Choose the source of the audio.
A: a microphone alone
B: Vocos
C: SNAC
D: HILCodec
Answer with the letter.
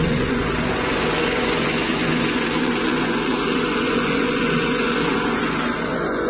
B